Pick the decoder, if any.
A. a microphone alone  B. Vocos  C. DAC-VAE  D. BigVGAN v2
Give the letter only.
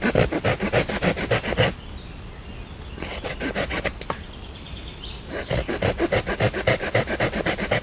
A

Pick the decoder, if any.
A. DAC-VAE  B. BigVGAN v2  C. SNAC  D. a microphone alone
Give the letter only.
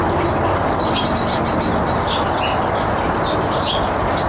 D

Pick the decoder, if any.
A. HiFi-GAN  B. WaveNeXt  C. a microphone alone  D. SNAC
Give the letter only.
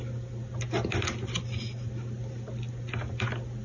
C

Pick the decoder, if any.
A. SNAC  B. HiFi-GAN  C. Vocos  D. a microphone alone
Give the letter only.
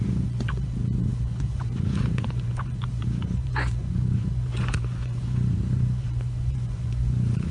C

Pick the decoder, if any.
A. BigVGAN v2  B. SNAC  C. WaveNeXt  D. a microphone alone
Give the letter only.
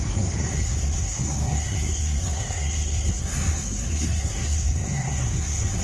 B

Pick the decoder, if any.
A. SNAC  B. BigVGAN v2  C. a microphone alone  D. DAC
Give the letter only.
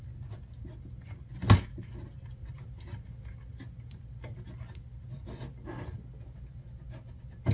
C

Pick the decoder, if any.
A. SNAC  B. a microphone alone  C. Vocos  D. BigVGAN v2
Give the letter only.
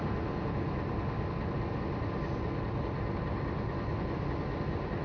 B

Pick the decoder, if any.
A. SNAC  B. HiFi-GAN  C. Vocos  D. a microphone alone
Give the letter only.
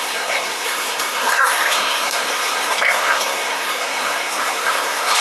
A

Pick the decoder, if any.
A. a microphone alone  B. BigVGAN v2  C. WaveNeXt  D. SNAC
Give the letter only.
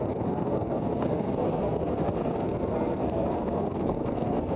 D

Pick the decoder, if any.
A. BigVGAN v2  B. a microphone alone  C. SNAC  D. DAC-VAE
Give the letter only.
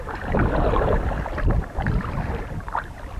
B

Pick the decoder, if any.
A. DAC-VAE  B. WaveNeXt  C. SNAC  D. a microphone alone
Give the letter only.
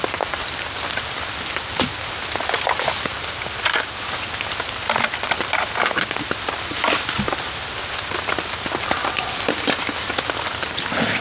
D